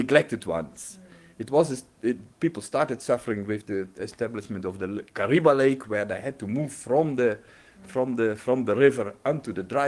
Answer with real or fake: fake